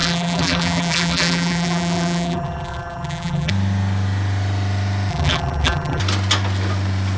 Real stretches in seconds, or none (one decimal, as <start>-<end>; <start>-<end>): 3.5-5.1; 6.0-7.2